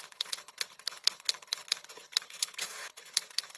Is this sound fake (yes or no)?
yes